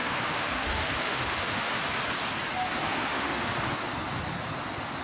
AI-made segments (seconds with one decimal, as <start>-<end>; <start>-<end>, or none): 0.0-1.8; 2.8-3.5